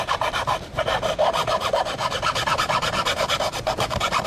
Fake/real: real